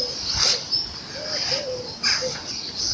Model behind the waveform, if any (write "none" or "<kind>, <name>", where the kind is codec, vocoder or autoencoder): none